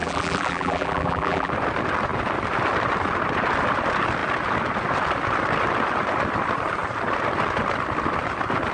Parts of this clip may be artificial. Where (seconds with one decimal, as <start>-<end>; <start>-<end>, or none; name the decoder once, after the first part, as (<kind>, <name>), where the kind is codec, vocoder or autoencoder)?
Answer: 0.0-1.5 (vocoder, BigVGAN v2)